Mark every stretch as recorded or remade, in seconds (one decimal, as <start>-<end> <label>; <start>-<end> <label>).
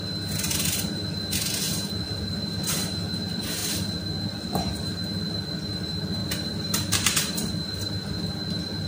0.0-6.2 recorded; 6.2-8.3 remade; 8.3-8.9 recorded